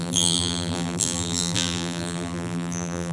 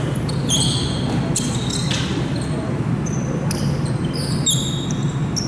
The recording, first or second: second